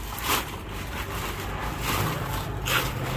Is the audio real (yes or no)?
yes